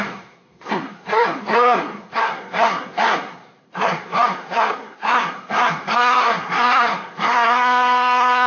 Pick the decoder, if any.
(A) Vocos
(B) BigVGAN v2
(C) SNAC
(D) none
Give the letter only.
C